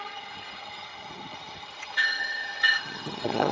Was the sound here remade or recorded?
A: remade